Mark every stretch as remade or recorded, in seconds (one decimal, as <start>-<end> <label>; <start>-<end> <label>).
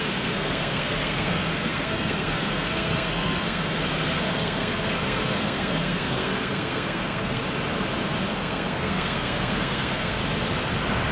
0.0-7.4 remade; 7.4-8.3 recorded; 8.3-10.2 remade; 10.2-11.1 recorded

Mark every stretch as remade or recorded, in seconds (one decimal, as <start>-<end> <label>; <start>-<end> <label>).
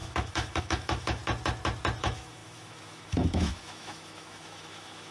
0.0-1.2 remade; 1.2-2.0 recorded; 2.0-5.1 remade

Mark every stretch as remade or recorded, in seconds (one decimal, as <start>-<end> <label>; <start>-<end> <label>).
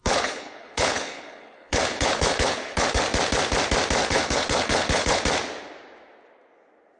0.0-3.0 remade; 3.0-4.0 recorded; 4.0-5.2 remade; 5.2-7.0 recorded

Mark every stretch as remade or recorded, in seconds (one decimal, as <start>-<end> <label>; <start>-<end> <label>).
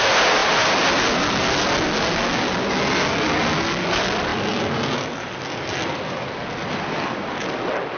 0.0-8.0 recorded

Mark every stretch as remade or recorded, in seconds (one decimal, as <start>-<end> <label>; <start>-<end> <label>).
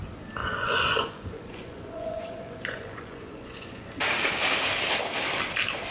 0.0-0.4 recorded; 0.4-3.9 remade; 3.9-5.9 recorded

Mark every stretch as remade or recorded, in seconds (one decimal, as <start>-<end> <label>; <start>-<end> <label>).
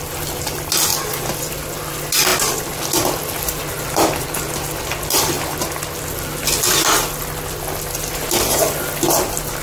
0.0-9.6 recorded